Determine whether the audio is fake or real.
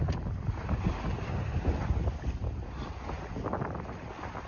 real